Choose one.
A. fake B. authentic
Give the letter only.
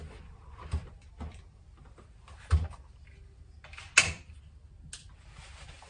B